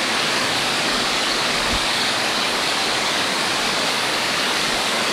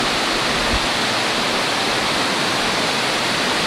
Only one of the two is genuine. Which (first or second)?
second